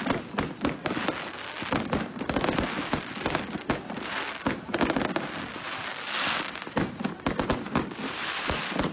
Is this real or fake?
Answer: real